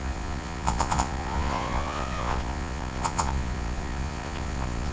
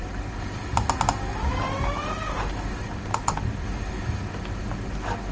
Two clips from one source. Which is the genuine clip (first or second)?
second